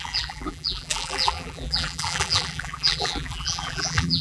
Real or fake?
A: fake